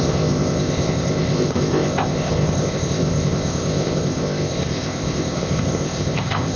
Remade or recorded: remade